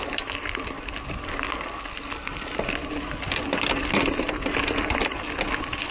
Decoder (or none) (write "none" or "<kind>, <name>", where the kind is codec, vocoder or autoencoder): none